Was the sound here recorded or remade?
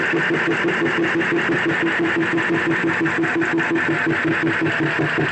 recorded